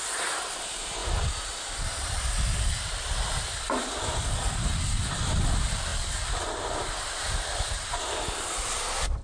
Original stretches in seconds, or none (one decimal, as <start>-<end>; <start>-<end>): none